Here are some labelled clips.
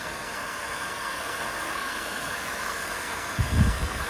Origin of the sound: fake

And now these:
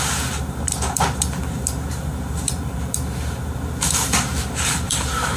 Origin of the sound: fake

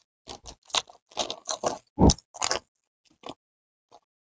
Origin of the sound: real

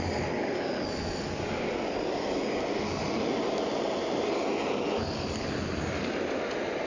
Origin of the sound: real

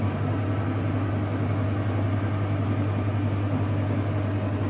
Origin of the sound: real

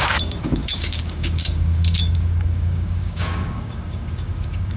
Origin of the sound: fake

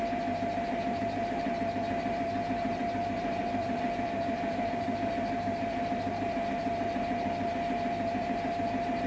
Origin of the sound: fake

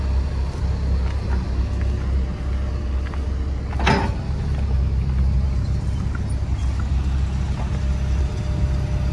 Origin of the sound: real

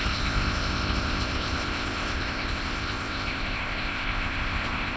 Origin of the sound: fake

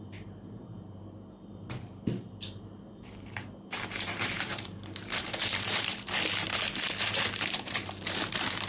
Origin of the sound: fake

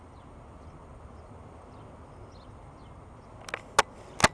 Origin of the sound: real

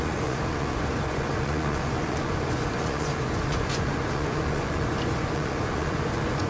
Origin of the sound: fake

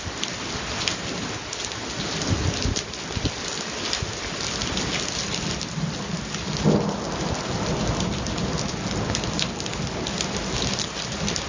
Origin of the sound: real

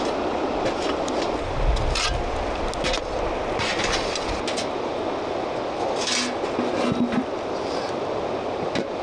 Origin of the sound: real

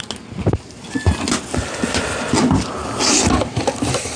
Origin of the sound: real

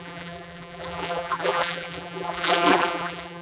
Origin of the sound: fake